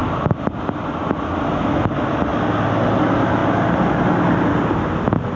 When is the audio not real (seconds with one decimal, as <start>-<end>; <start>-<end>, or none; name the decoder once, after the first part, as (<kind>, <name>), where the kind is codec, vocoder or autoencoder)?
none